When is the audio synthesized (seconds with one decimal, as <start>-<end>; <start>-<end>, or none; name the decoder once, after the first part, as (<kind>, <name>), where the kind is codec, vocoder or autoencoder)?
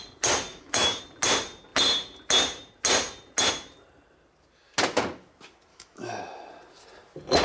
0.5-1.0 (autoencoder, DAC-VAE); 5.7-6.2